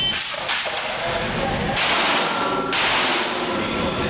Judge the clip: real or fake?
real